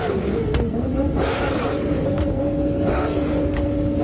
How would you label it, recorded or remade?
remade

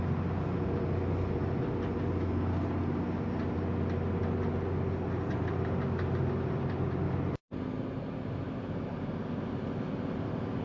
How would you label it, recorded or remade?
recorded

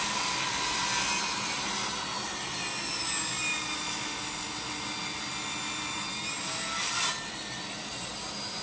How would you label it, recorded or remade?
recorded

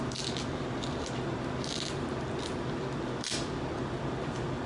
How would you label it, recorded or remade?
recorded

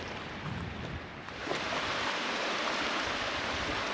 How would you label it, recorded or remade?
remade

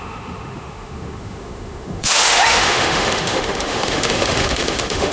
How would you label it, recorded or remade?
remade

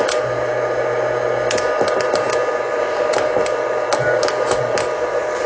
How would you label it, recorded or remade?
recorded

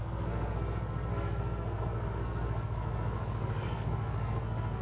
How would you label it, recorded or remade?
remade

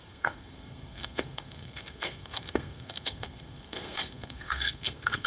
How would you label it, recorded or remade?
remade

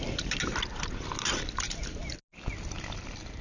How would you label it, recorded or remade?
recorded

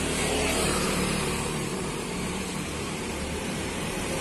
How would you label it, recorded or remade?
remade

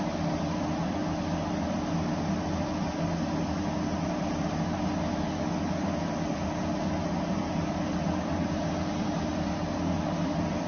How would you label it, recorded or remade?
recorded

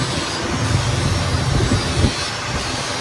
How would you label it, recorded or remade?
recorded